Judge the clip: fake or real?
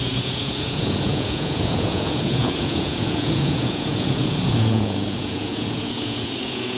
fake